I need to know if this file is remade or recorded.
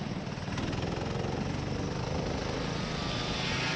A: recorded